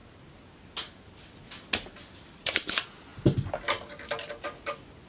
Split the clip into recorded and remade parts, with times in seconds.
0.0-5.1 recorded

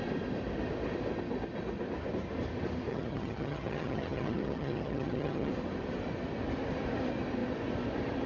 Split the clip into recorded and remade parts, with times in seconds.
0.0-2.9 recorded; 2.9-5.5 remade; 5.5-8.3 recorded

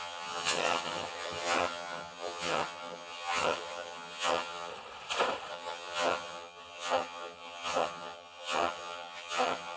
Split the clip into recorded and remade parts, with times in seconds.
0.0-4.7 remade; 4.7-5.5 recorded; 5.5-9.8 remade

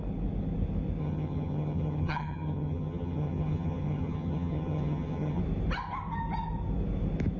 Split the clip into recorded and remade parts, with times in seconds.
0.0-1.0 recorded; 1.0-5.4 remade; 5.4-7.4 recorded

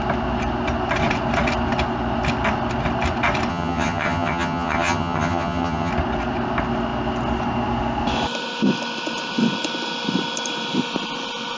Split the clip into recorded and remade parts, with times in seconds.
0.0-3.5 recorded; 3.5-5.9 remade; 5.9-11.6 recorded

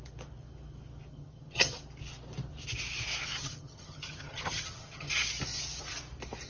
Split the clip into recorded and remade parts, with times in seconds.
0.0-1.1 recorded; 1.1-1.8 remade; 1.8-3.4 recorded; 3.4-5.1 remade; 5.1-6.5 recorded

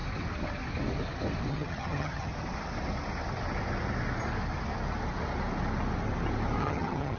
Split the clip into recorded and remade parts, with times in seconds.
0.0-1.5 recorded; 1.5-2.3 remade; 2.3-6.6 recorded; 6.6-7.2 remade

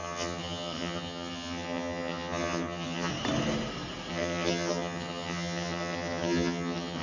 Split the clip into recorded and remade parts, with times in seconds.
0.0-3.1 remade; 3.1-4.1 recorded; 4.1-7.0 remade